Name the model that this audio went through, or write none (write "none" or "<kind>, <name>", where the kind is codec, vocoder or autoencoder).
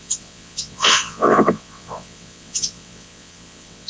vocoder, WaveNeXt